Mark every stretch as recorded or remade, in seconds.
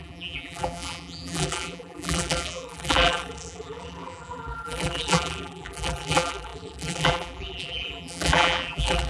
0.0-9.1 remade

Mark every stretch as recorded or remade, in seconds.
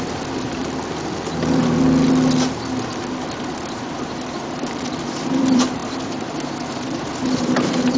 0.0-0.6 remade; 0.6-3.2 recorded; 3.2-8.0 remade